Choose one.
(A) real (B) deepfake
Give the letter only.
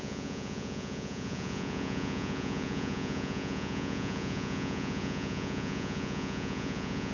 B